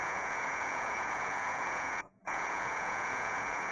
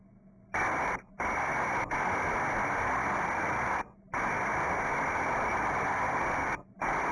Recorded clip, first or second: second